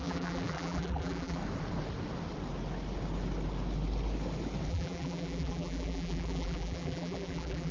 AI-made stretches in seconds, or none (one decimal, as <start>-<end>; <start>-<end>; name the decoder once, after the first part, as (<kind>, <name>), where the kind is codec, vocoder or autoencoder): 0.0-1.4 (vocoder, BigVGAN v2); 4.7-7.7